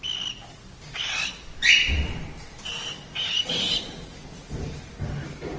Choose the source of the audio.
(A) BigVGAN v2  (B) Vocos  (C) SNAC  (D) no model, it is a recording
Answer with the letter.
D